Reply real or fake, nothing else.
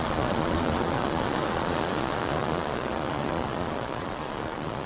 fake